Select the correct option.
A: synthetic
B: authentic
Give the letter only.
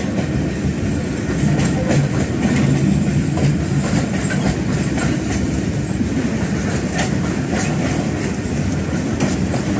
B